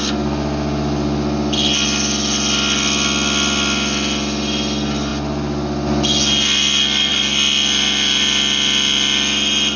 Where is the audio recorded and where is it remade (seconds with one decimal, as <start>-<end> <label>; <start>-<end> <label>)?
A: 0.0-9.8 recorded